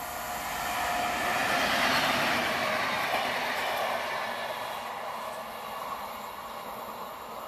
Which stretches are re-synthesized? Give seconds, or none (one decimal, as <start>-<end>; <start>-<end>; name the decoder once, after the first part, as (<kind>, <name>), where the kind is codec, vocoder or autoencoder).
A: none